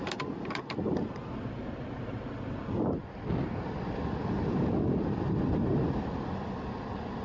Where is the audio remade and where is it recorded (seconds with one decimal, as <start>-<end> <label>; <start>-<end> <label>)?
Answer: 0.0-7.2 recorded